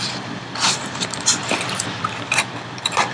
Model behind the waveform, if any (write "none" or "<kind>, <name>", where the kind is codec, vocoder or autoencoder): vocoder, BigVGAN v2